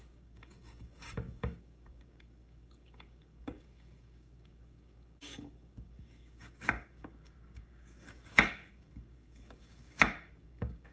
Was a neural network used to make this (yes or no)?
yes